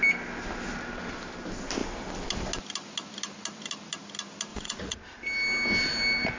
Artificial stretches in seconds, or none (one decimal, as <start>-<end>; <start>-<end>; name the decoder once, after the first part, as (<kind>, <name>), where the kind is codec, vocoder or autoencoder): 4.5-5.0 (vocoder, Vocos)